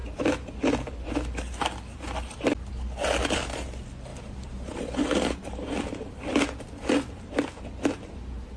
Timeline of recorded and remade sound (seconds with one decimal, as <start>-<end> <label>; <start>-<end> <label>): 0.0-4.1 recorded; 4.1-4.8 remade; 4.8-8.6 recorded